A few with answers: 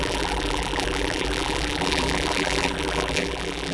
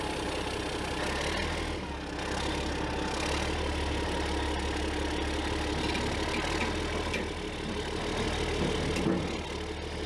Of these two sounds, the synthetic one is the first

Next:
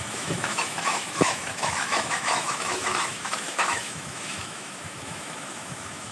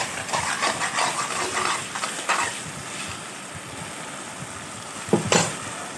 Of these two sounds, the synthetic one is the first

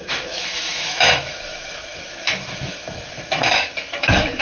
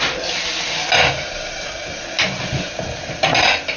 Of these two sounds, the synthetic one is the first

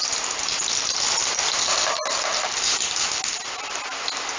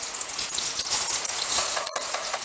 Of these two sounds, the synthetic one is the second